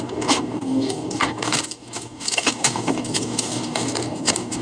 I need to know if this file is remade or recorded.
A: remade